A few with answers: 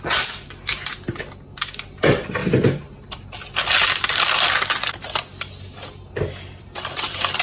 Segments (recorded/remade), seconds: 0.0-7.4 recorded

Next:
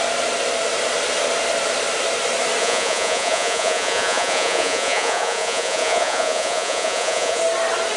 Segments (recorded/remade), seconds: 0.0-2.6 recorded; 2.6-7.4 remade; 7.4-8.0 recorded

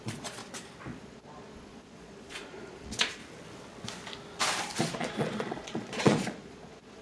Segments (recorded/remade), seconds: 0.0-0.4 remade; 0.4-1.0 recorded; 1.0-3.2 remade; 3.2-4.8 recorded; 4.8-7.0 remade

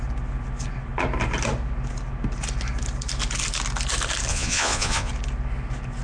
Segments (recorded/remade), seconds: 0.0-4.3 recorded; 4.3-5.1 remade; 5.1-6.0 recorded

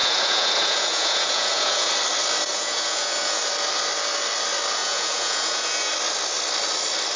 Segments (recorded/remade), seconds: 0.0-1.9 remade; 1.9-2.5 recorded; 2.5-3.4 remade; 3.4-4.8 recorded; 4.8-5.9 remade; 5.9-7.2 recorded

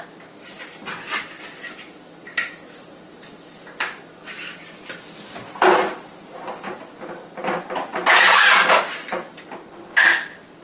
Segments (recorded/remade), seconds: 0.0-10.6 recorded

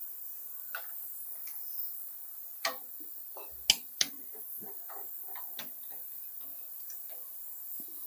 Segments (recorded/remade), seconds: 0.0-6.5 recorded; 6.5-8.1 remade